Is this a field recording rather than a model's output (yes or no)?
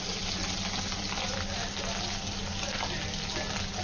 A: yes